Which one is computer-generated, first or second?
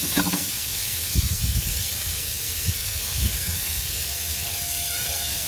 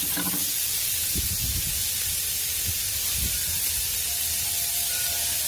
first